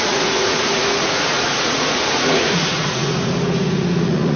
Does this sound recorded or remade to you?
remade